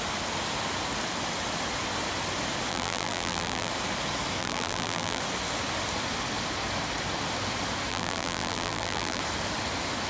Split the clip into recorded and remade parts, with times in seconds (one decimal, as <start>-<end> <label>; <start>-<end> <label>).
0.0-2.7 recorded; 2.7-3.7 remade; 3.7-4.4 recorded; 4.4-5.2 remade; 5.2-7.9 recorded; 7.9-9.2 remade; 9.2-10.1 recorded